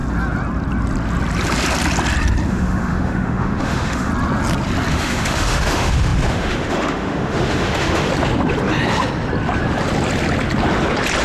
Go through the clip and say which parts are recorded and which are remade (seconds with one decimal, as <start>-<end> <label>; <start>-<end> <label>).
0.0-2.5 recorded; 2.5-4.1 remade; 4.1-4.9 recorded; 4.9-8.1 remade; 8.1-11.2 recorded

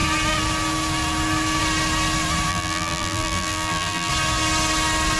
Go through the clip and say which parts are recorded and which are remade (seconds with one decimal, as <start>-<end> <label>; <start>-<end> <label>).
0.0-2.5 recorded; 2.5-4.1 remade; 4.1-5.2 recorded

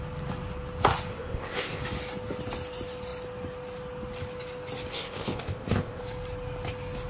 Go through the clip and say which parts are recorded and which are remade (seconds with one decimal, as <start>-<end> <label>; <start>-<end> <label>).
0.0-1.1 recorded; 1.1-1.8 remade; 1.8-4.9 recorded; 4.9-6.0 remade; 6.0-7.1 recorded

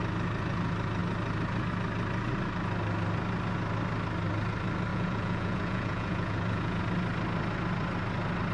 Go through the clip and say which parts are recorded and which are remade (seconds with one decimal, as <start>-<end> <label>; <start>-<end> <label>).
0.0-4.9 recorded; 4.9-6.8 remade; 6.8-8.5 recorded

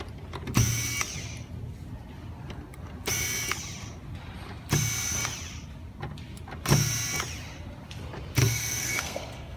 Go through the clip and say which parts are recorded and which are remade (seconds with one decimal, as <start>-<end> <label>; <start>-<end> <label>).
0.0-8.4 recorded; 8.4-9.6 remade

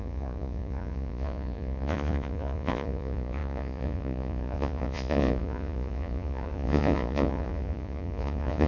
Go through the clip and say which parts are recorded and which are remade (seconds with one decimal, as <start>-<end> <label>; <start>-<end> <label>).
0.0-8.7 remade